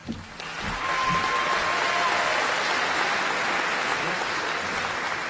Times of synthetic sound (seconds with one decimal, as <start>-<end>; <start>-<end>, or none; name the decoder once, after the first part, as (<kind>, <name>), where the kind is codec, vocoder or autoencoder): 0.0-0.8 (vocoder, BigVGAN v2); 3.9-4.4